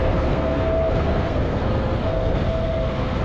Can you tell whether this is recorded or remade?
remade